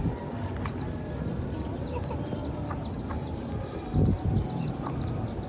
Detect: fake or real real